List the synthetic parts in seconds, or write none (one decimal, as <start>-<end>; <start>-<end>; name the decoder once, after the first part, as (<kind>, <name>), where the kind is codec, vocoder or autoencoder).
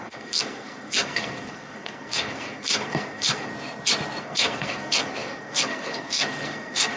0.0-3.5 (codec, SNAC); 4.2-7.0